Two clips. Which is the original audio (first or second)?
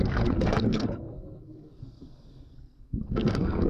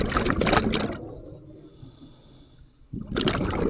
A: second